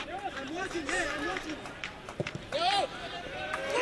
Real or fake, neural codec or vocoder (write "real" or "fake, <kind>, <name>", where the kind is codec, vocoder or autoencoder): fake, vocoder, BigVGAN v2